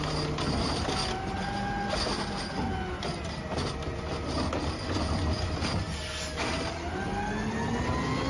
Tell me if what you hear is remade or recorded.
recorded